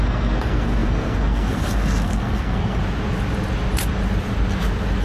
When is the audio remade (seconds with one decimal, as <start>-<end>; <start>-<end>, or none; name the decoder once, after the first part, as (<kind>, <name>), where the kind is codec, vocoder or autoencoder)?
0.0-2.8 (codec, SNAC)